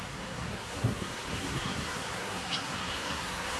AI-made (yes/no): yes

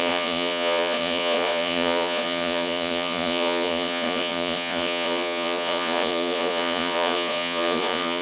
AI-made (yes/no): yes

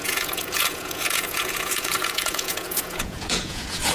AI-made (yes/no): yes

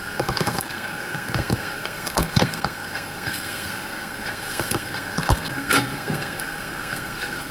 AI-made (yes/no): yes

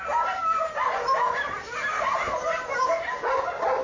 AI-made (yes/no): no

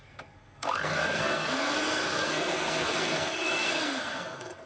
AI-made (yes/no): yes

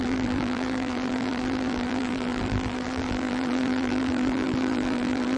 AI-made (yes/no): yes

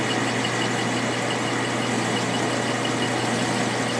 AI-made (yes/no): no